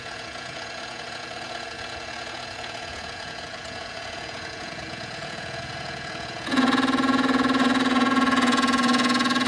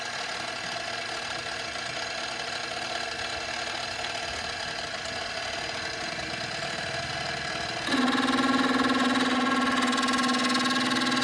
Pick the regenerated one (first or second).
first